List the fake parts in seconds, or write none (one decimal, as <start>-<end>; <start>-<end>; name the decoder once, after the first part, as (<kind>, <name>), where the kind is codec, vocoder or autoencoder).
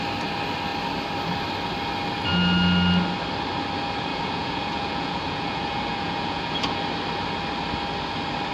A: 4.1-6.8 (vocoder, Vocos)